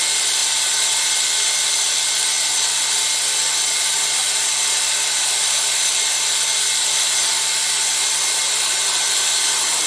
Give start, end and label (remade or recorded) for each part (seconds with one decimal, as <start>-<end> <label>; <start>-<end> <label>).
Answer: 0.0-0.4 recorded; 0.4-1.1 remade; 1.1-4.2 recorded; 4.2-5.8 remade; 5.8-9.9 recorded